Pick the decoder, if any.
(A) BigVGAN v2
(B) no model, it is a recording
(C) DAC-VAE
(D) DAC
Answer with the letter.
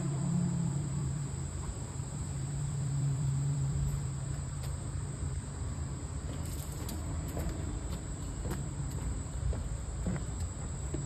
A